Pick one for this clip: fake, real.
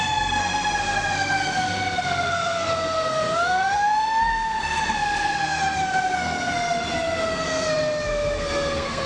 fake